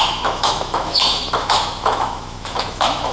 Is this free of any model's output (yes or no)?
no